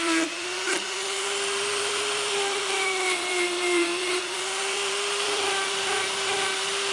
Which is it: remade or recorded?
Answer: remade